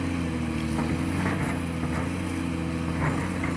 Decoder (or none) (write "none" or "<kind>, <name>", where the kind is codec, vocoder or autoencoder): none